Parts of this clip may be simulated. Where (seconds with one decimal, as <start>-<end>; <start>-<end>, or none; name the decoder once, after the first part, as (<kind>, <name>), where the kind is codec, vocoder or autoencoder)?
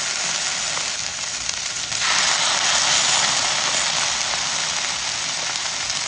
1.1-2.3 (vocoder, BigVGAN v2)